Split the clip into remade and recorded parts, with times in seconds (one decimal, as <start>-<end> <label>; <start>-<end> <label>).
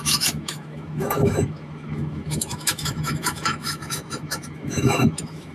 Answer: 0.0-5.5 remade